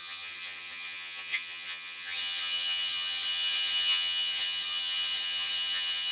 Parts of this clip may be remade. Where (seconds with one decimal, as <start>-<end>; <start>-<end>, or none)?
0.0-6.1